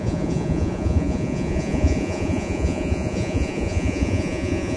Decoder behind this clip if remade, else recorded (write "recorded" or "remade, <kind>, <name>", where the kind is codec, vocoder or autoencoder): remade, vocoder, Vocos